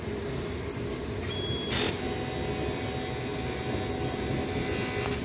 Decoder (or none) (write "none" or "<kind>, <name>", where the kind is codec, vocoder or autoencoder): none